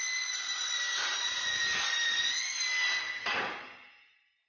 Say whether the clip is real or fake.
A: real